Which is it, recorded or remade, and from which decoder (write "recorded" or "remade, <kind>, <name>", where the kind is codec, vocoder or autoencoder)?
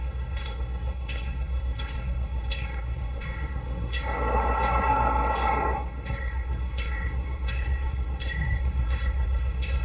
remade, codec, SNAC